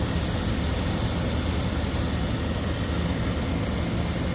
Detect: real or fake real